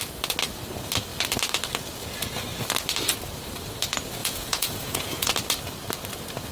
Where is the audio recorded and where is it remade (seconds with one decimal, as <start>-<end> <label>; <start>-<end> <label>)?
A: 0.0-4.2 recorded; 4.2-5.3 remade; 5.3-6.5 recorded